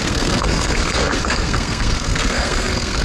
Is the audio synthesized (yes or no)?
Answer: yes